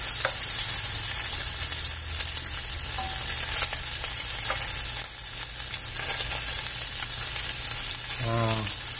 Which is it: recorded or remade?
recorded